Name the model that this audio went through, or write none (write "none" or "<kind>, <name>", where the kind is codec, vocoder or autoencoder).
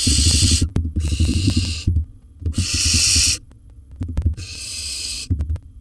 vocoder, WaveNeXt